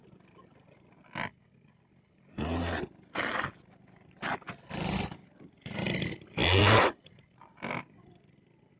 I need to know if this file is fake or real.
real